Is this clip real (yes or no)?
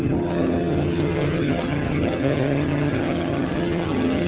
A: no